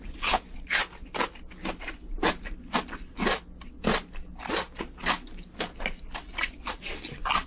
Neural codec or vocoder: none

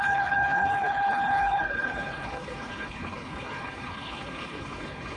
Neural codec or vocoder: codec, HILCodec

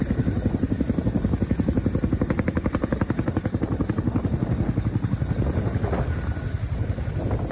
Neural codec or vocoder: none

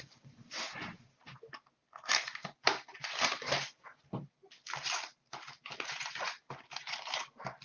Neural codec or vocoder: none